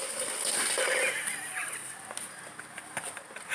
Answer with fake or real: real